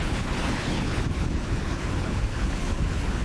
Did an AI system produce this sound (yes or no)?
yes